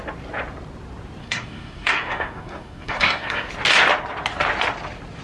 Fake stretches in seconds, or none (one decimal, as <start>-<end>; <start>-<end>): 1.2-3.5